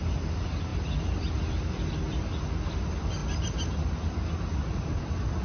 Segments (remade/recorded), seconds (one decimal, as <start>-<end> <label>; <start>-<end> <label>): 0.0-5.4 recorded